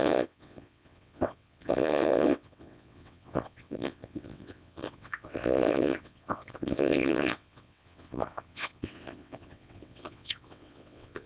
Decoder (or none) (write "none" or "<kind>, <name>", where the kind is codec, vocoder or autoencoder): vocoder, WaveNeXt